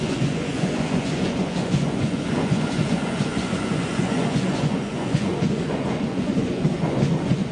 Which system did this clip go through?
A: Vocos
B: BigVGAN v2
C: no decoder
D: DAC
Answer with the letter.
A